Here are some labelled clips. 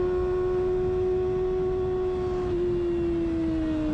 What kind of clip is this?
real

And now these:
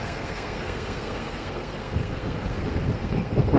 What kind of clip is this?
fake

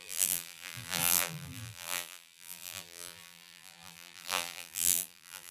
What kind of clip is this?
fake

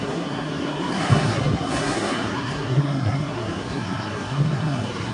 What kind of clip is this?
fake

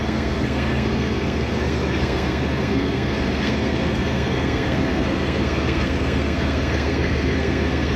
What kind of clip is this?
fake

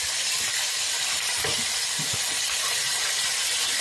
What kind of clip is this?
fake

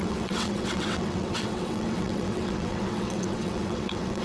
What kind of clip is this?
fake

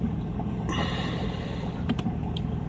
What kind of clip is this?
fake